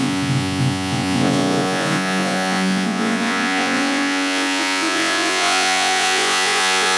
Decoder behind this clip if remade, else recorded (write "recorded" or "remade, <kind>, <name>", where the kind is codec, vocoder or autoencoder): remade, vocoder, Vocos